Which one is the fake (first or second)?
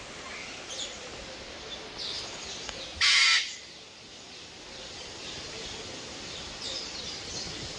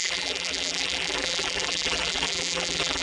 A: second